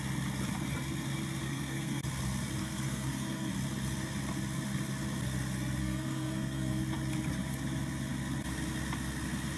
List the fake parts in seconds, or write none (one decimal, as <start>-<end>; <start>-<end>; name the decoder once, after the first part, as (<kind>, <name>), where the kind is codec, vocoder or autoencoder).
1.4-2.0 (codec, SNAC); 2.6-3.5; 5.8-6.8